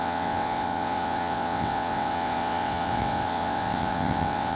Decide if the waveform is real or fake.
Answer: fake